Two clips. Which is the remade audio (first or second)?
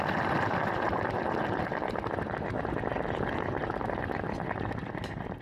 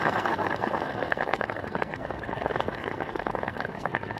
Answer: second